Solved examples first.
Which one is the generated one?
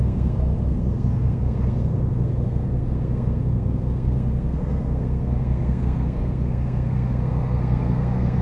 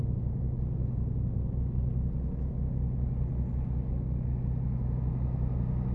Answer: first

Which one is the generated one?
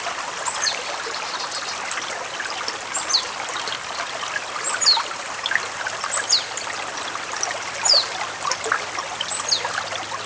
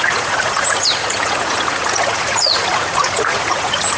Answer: second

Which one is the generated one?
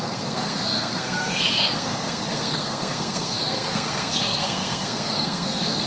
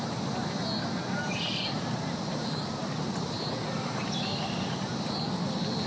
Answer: first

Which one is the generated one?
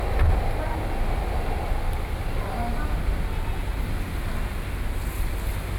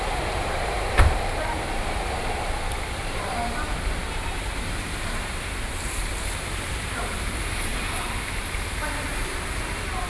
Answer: second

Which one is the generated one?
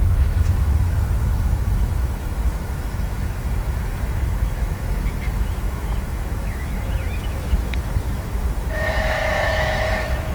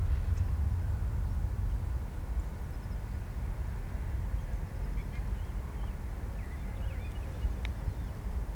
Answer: first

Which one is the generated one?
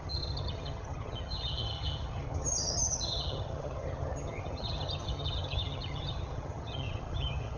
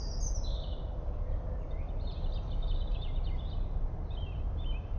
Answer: first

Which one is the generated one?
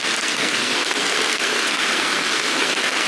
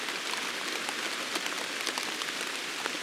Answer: first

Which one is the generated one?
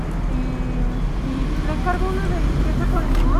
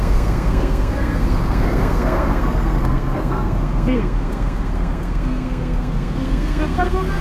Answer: second